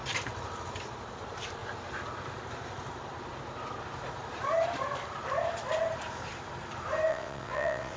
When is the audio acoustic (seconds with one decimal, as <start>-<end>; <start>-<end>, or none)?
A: 0.0-7.1